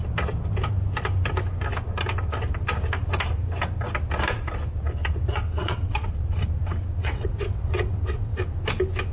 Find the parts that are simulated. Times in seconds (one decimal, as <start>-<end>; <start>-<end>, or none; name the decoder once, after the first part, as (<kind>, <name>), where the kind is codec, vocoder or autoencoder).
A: 5.3-6.1 (vocoder, WaveNeXt); 7.0-8.4